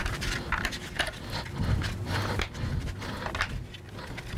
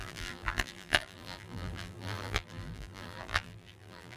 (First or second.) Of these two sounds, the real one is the first